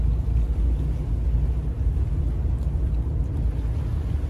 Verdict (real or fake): real